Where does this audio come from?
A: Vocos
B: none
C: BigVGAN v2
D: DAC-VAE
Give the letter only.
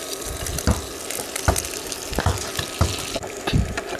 B